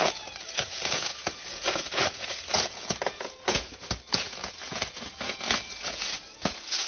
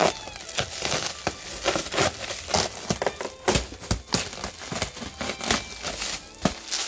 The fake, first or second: first